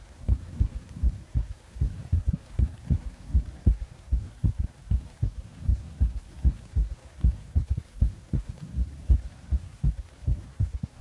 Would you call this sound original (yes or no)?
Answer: no